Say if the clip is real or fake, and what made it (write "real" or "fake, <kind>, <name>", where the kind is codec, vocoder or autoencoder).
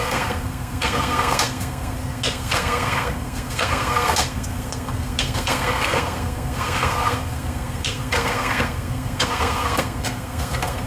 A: fake, codec, SNAC